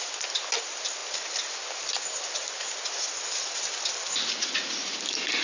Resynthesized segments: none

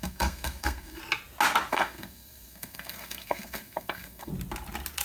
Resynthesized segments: 0.0-1.0 (codec, SNAC); 1.7-4.3